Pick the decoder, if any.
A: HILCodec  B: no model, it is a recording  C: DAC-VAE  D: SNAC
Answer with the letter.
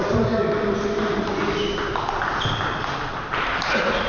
B